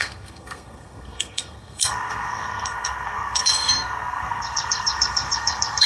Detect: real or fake fake